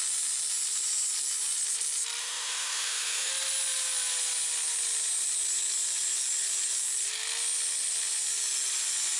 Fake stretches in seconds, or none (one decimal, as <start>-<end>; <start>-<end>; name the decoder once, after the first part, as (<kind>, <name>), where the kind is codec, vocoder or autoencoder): 2.2-3.3 (autoencoder, DAC-VAE)